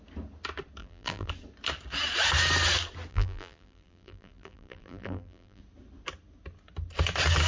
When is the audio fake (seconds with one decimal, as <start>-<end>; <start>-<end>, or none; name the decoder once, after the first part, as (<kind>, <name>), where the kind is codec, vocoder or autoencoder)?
0.8-1.3 (vocoder, BigVGAN v2); 3.1-5.6